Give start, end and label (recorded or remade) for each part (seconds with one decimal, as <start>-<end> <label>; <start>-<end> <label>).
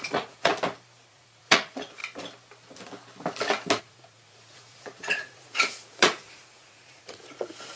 0.0-0.5 remade; 0.5-1.1 recorded; 1.1-2.0 remade; 2.0-3.8 recorded; 3.8-7.8 remade